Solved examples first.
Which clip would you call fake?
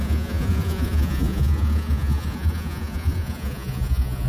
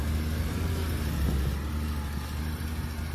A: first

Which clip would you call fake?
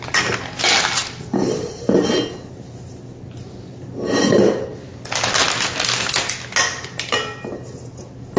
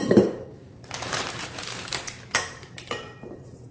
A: second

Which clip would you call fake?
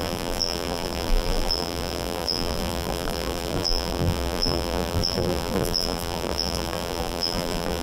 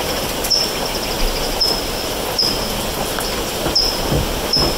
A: first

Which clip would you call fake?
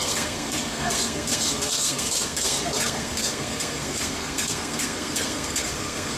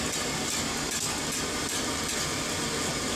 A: first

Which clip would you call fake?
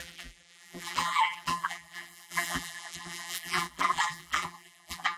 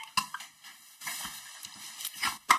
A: first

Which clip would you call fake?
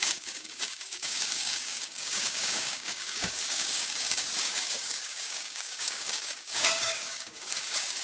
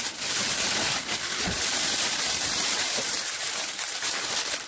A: first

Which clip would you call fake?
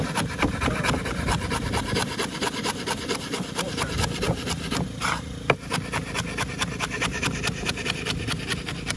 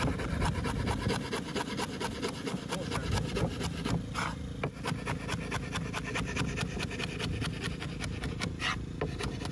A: first